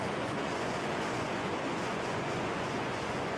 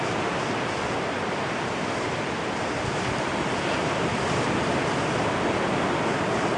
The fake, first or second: first